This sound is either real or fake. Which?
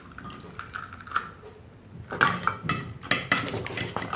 real